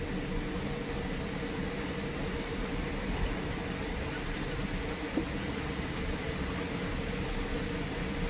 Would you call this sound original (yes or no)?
yes